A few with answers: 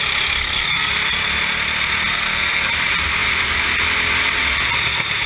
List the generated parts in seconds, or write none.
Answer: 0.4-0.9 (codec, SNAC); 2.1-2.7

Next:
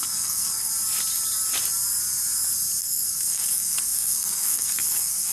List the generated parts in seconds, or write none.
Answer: 0.0-0.7 (codec, SNAC); 2.8-5.3

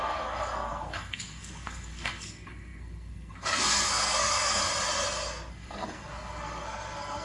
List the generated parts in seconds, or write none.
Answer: 0.0-4.6 (codec, SNAC); 5.5-7.2